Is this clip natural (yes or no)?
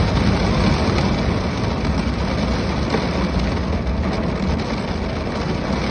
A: yes